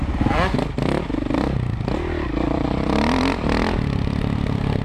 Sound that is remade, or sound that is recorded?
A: remade